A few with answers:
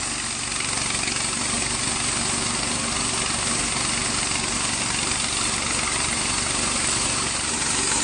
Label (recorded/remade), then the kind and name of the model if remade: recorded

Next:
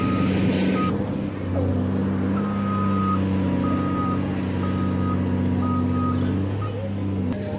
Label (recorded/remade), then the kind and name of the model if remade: recorded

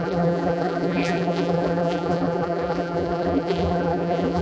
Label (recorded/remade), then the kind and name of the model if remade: remade, vocoder, BigVGAN v2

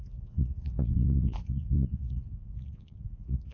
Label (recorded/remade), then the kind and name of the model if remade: remade, vocoder, Vocos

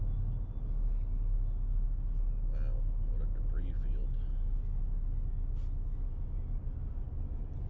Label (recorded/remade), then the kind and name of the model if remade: recorded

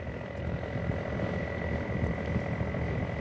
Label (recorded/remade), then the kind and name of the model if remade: recorded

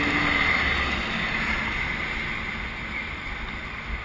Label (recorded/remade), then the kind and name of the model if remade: recorded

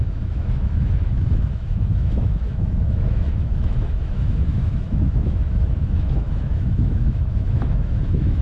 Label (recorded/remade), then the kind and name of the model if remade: remade, autoencoder, DAC-VAE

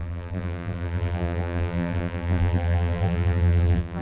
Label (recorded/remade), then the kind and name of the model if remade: remade, vocoder, BigVGAN v2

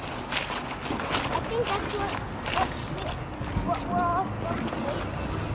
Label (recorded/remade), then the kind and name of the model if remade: recorded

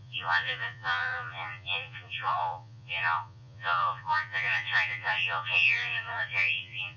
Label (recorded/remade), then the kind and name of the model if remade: remade, vocoder, Vocos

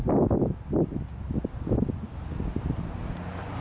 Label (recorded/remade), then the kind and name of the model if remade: recorded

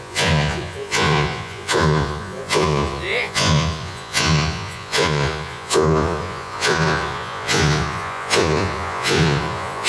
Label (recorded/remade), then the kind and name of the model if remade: remade, vocoder, Vocos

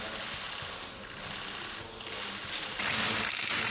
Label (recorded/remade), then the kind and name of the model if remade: recorded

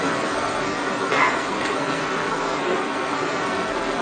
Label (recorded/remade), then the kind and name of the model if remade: remade, codec, SNAC